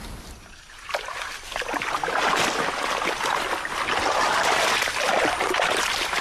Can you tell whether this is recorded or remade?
recorded